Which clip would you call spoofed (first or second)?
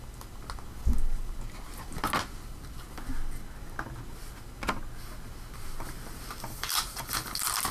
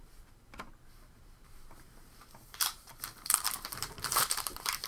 second